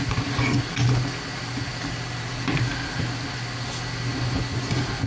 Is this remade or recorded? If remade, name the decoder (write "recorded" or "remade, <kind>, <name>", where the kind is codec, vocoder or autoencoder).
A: recorded